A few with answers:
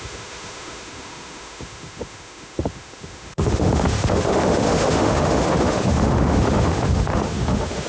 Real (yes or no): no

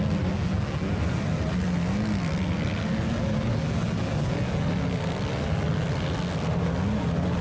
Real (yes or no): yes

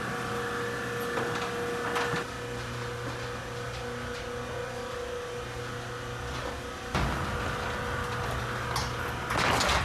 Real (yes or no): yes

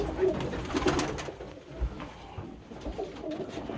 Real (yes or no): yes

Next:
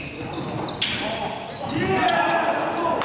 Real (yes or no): yes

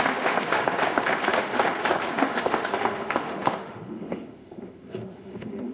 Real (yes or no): no